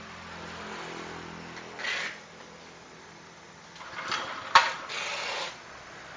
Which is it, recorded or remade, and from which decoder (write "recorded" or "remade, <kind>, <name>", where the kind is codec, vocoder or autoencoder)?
recorded